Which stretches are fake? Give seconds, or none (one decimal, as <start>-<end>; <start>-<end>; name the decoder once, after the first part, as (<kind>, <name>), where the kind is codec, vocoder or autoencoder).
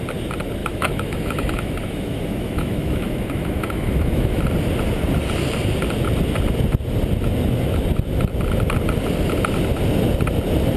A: 0.6-4.4 (autoencoder, DAC-VAE)